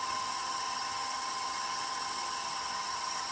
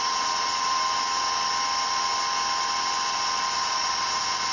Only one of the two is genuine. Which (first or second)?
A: second